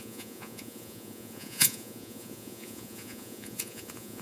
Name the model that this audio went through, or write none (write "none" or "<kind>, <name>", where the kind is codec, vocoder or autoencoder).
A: vocoder, Vocos